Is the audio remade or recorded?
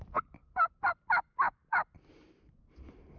recorded